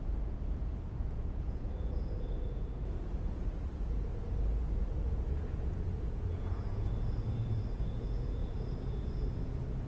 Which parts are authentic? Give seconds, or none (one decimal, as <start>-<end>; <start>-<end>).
none

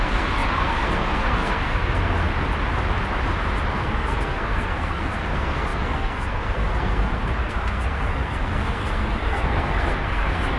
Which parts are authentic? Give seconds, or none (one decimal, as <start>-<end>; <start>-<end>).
2.3-3.7

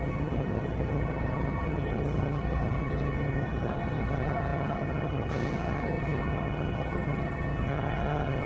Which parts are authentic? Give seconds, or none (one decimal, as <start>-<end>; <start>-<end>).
none

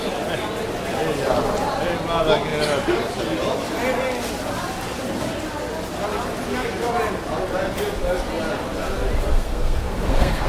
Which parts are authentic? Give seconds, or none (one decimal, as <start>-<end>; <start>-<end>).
0.0-9.3

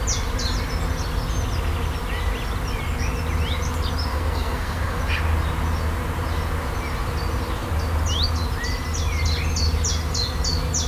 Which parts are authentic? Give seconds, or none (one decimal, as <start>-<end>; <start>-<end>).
0.0-4.1; 5.0-10.9

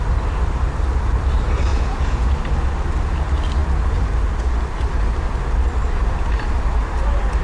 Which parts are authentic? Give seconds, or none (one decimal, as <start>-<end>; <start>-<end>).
0.0-1.7; 2.3-7.4

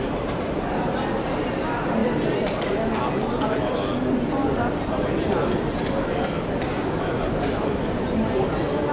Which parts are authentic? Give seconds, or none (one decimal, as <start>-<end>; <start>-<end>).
0.0-8.9

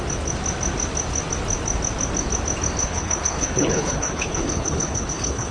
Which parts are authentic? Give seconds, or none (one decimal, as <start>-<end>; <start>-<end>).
0.0-2.8